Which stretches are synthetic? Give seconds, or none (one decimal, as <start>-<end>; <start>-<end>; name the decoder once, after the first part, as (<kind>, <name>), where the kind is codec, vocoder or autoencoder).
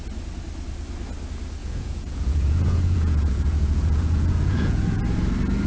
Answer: 1.6-5.0 (vocoder, Vocos)